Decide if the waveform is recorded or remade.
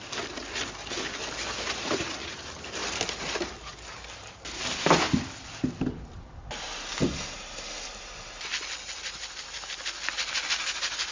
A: recorded